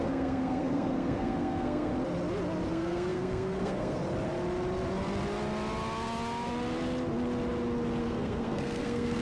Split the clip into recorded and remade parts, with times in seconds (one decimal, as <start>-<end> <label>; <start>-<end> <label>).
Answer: 0.0-1.9 remade; 1.9-2.7 recorded; 2.7-4.0 remade; 4.0-8.0 recorded; 8.0-9.2 remade